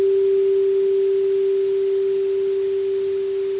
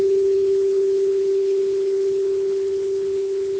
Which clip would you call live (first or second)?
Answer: first